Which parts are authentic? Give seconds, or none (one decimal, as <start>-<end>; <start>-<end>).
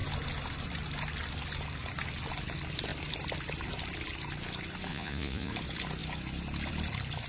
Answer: 0.0-4.9; 5.5-7.3